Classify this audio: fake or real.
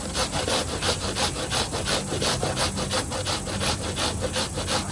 real